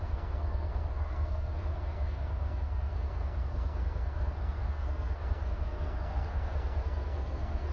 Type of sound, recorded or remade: remade